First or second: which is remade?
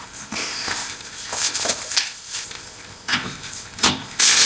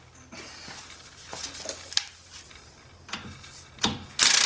first